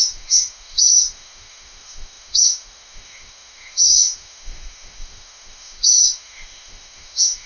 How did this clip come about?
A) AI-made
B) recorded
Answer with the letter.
A